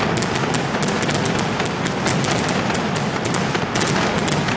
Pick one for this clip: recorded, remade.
recorded